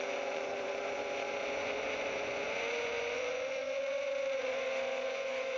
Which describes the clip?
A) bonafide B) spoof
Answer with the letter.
B